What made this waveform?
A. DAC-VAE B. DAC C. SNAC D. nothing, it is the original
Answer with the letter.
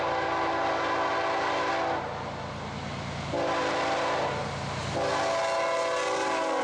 D